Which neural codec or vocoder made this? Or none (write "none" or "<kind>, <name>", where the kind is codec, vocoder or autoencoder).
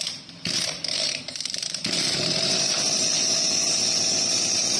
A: vocoder, BigVGAN v2